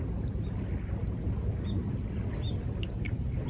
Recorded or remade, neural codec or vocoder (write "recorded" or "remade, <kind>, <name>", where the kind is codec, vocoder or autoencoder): recorded